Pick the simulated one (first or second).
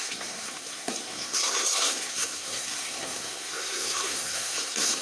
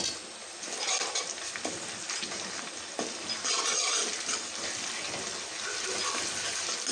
first